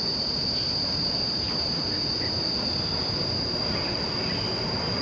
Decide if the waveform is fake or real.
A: real